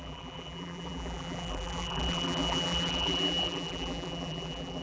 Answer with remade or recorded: remade